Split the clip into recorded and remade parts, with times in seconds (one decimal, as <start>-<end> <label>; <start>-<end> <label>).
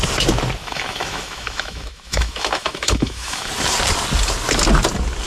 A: 0.0-0.6 recorded; 0.6-3.5 remade; 3.5-5.3 recorded